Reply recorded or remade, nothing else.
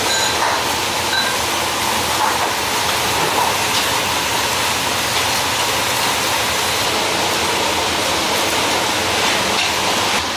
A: recorded